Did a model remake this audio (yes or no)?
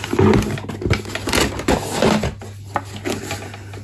no